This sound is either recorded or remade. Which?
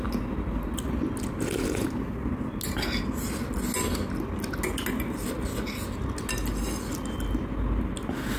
recorded